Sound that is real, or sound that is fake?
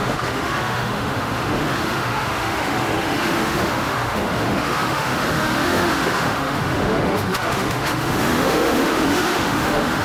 fake